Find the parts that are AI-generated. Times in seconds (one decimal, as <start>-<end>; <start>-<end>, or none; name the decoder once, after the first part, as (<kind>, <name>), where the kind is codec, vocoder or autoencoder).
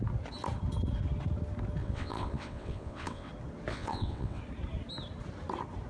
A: 1.8-3.3 (vocoder, WaveNeXt); 3.7-4.4